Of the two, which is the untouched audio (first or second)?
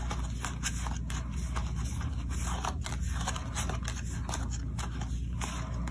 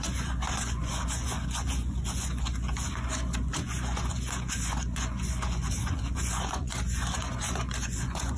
first